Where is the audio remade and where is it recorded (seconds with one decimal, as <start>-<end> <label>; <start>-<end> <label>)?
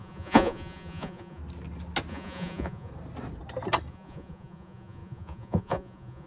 0.0-1.4 remade; 1.4-2.1 recorded; 2.1-2.9 remade; 2.9-3.9 recorded; 3.9-6.3 remade